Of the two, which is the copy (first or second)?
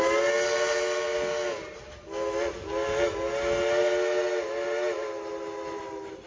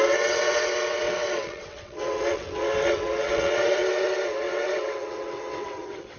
second